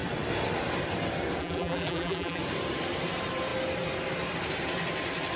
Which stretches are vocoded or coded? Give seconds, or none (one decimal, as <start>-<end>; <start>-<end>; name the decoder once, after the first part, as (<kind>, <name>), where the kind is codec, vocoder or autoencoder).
1.4-2.4 (vocoder, BigVGAN v2)